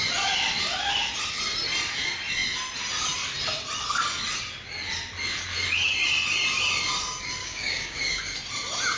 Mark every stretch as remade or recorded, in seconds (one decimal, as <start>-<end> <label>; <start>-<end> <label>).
0.0-7.4 recorded; 7.4-8.2 remade; 8.2-9.0 recorded